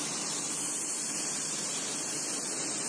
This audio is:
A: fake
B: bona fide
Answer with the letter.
B